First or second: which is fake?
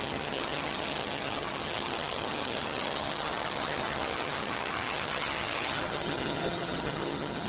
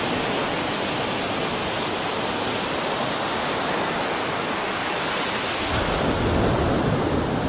first